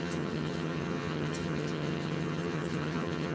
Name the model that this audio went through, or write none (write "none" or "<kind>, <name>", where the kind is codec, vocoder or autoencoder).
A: vocoder, HiFi-GAN